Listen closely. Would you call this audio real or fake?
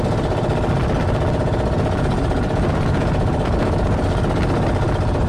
real